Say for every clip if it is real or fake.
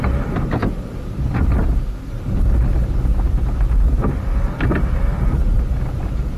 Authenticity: real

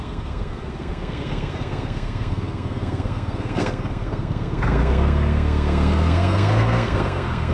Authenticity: fake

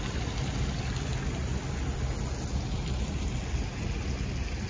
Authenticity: real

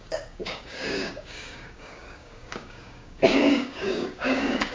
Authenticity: fake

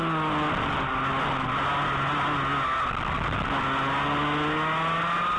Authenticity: real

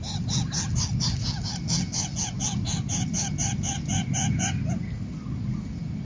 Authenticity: real